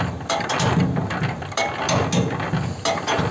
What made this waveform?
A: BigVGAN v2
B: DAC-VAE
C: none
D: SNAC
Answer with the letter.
C